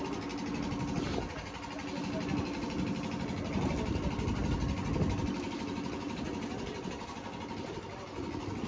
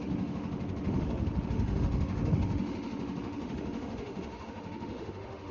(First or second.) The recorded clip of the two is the first